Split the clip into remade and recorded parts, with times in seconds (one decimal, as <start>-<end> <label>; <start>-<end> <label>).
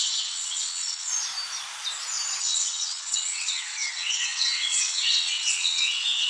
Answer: 0.0-1.1 remade; 1.1-2.4 recorded; 2.4-6.3 remade